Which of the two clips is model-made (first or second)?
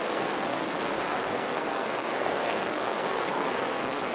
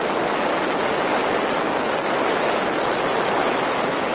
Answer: first